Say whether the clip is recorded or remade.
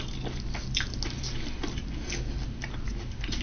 recorded